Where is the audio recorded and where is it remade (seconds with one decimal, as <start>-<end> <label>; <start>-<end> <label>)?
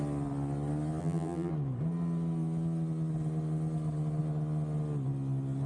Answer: 0.0-1.0 recorded; 1.0-1.5 remade; 1.5-5.7 recorded